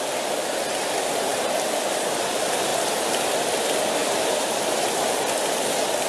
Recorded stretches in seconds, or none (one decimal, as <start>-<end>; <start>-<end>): 0.0-1.3; 2.2-4.0; 5.4-6.1